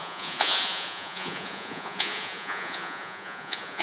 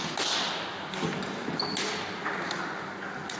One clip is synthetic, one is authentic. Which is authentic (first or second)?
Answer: second